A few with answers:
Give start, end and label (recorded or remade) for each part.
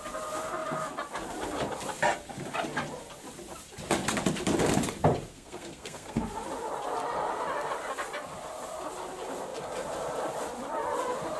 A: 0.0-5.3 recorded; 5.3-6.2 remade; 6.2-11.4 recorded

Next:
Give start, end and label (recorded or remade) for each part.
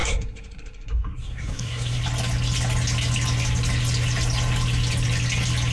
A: 0.0-2.0 remade; 2.0-5.7 recorded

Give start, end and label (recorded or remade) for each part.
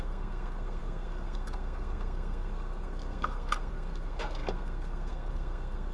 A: 0.0-5.9 remade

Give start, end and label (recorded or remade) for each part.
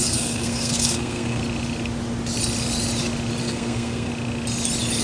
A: 0.0-1.4 remade; 1.4-3.4 recorded; 3.4-4.1 remade; 4.1-5.0 recorded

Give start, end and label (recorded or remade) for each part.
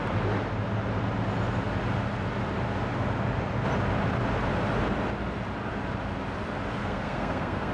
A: 0.0-6.8 recorded; 6.8-7.7 remade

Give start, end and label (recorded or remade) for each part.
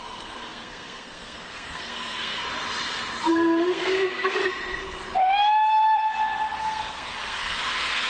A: 0.0-2.4 remade; 2.4-3.3 recorded; 3.3-4.4 remade; 4.4-6.6 recorded; 6.6-8.1 remade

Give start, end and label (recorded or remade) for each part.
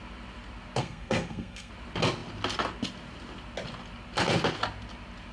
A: 0.0-0.8 recorded; 0.8-1.7 remade; 1.7-5.3 recorded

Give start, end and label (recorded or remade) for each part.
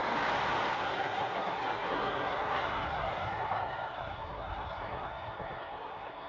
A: 0.0-0.7 recorded; 0.7-6.3 remade